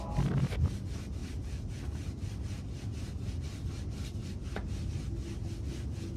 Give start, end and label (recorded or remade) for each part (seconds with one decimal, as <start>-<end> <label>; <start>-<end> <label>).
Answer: 0.0-6.2 recorded